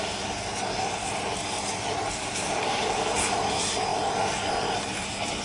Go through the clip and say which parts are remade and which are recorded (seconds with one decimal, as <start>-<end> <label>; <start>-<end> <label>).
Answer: 0.0-5.4 recorded